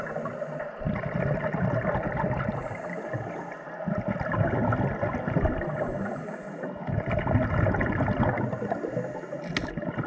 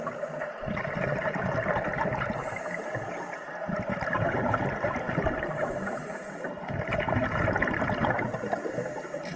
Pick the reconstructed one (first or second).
second